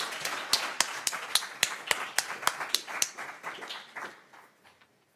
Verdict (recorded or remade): recorded